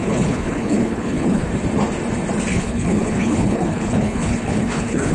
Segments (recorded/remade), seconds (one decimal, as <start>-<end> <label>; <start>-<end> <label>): 0.0-1.5 remade; 1.5-2.5 recorded; 2.5-5.1 remade